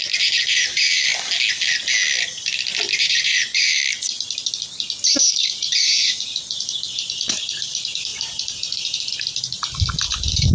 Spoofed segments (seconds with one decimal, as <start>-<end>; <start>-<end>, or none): 0.0-1.1; 3.0-3.8; 5.3-10.5